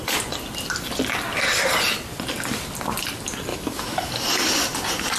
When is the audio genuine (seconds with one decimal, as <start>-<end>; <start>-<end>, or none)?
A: 0.0-3.5; 4.1-5.2